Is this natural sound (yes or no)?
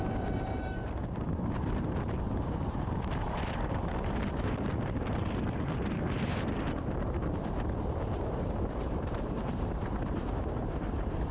no